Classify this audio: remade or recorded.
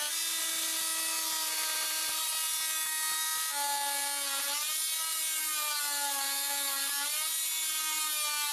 recorded